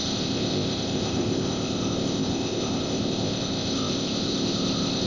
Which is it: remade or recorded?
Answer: remade